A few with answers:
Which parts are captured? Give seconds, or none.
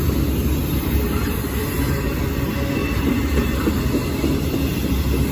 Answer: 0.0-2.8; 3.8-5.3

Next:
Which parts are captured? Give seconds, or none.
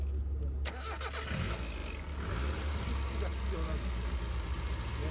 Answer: 0.0-5.1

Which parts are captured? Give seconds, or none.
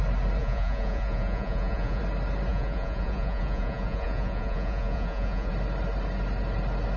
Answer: 0.0-0.4; 2.0-2.5; 5.5-7.0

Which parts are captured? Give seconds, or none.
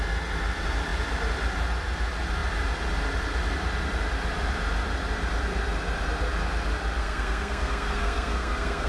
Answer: 0.0-7.0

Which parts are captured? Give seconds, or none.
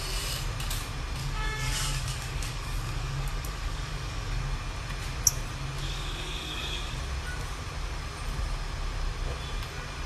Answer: 0.0-1.2; 4.4-5.8; 7.0-10.1